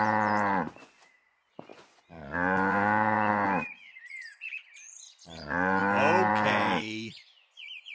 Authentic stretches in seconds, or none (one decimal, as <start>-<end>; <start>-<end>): 5.8-6.3